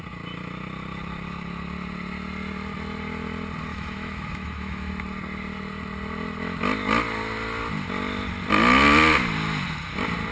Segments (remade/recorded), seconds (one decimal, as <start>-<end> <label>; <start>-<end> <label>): 0.0-3.7 recorded; 3.7-4.9 remade; 4.9-10.3 recorded